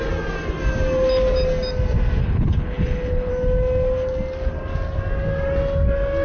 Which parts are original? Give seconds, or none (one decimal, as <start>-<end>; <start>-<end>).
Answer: 0.0-2.2; 3.3-6.2